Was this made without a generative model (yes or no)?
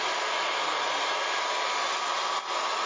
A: yes